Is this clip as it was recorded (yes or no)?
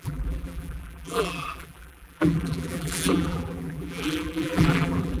no